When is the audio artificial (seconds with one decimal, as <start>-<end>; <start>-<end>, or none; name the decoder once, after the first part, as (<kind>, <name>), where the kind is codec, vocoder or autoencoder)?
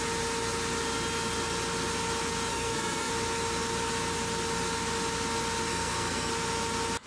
2.5-3.1 (codec, SNAC); 5.7-6.3